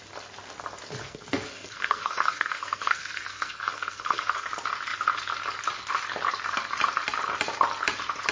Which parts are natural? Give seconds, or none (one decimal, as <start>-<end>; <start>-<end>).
0.0-1.0; 4.5-8.3